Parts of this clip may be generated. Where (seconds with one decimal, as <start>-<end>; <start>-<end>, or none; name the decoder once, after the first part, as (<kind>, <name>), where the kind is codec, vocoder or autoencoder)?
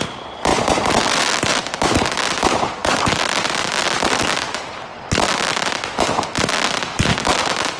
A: none